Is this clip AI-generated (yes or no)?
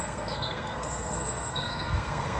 yes